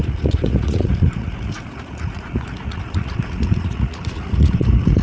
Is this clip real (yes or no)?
no